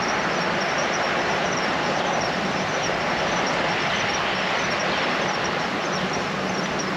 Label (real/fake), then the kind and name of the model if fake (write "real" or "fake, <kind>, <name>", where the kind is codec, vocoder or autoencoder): real